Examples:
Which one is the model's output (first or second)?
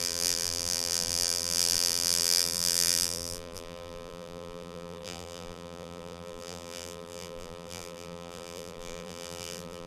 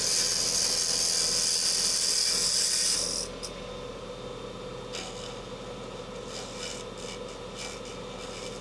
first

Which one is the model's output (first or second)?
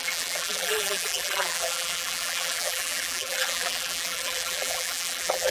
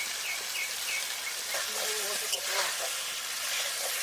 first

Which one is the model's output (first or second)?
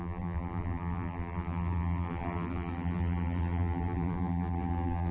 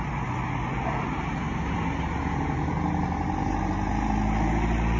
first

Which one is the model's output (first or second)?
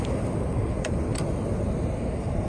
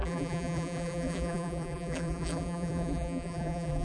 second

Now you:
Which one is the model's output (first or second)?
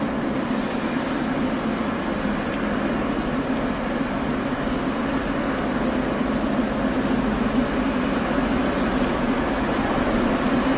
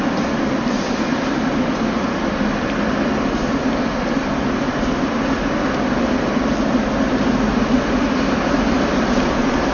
second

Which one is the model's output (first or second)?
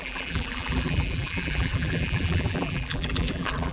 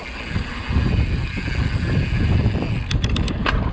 first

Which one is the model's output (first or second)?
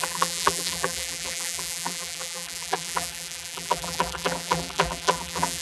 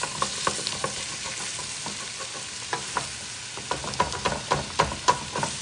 first